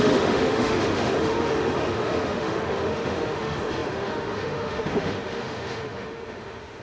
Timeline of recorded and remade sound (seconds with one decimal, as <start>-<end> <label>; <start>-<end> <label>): 0.0-6.8 remade